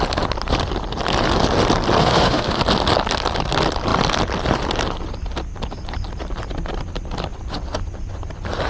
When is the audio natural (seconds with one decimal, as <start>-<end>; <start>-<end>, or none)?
0.0-2.0; 2.6-8.7

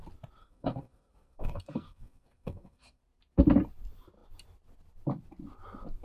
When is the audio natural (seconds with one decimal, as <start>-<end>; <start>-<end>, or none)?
0.0-0.4; 3.0-6.0

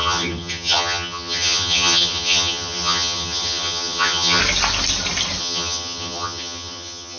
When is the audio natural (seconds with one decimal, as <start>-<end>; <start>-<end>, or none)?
4.4-5.4

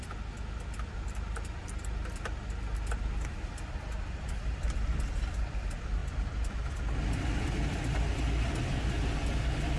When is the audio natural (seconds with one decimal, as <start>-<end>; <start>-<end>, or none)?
0.0-9.8

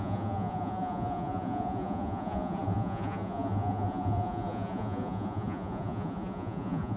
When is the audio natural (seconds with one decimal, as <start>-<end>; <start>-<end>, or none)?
none

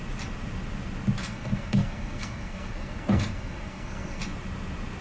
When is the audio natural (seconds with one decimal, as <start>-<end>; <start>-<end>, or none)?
0.0-1.2; 4.2-5.0

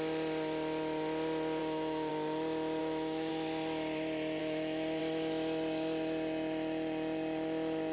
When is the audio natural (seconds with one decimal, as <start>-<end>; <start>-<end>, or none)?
0.0-1.6; 2.1-2.8; 3.3-4.4; 5.0-7.9

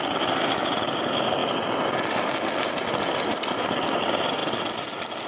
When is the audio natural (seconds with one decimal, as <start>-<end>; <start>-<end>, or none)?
0.0-5.3